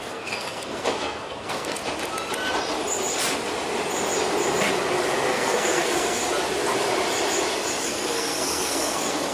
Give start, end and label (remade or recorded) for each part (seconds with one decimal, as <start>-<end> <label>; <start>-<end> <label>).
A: 0.0-1.8 remade; 1.8-5.3 recorded; 5.3-6.2 remade; 6.2-7.8 recorded; 7.8-9.3 remade